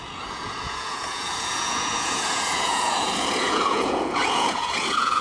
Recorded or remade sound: remade